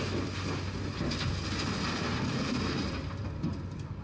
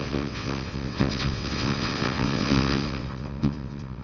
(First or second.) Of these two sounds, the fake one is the second